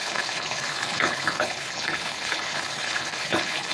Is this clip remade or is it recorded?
remade